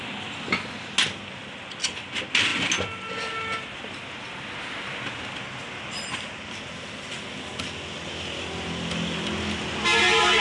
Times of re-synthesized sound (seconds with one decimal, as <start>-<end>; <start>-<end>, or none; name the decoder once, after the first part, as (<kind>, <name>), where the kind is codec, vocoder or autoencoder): none